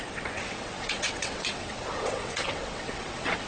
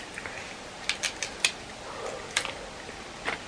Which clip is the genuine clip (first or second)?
second